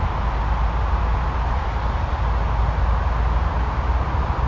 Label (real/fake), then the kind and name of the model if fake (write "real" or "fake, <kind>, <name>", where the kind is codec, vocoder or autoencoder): real